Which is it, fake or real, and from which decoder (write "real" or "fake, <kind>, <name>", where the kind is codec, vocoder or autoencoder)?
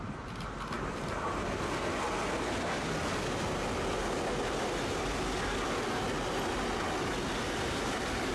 real